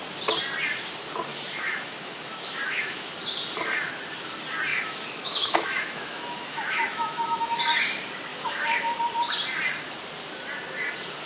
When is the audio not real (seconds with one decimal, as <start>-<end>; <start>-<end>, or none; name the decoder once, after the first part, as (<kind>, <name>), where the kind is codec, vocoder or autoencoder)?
1.3-3.1 (autoencoder, DAC-VAE); 4.7-7.6; 8.3-9.0